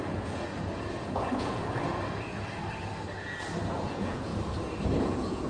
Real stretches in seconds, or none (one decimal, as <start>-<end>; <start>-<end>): 1.6-3.7; 4.3-5.0